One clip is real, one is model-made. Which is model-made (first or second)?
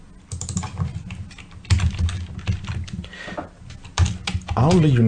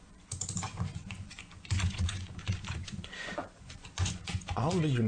second